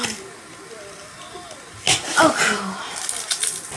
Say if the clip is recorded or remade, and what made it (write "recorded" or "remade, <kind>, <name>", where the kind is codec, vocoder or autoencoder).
recorded